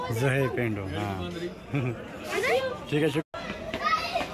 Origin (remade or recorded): recorded